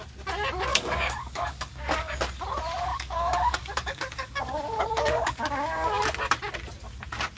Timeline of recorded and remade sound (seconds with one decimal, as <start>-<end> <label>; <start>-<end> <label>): 0.0-0.7 recorded; 0.7-2.2 remade; 2.2-2.9 recorded; 2.9-6.0 remade; 6.0-7.4 recorded